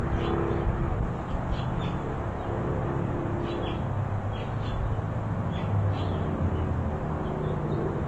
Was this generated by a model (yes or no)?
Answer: no